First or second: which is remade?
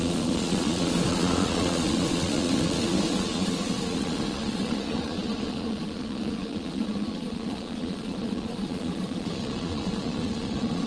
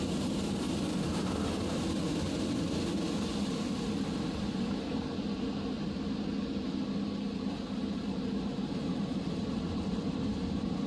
first